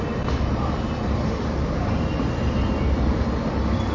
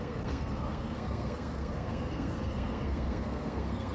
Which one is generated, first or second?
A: second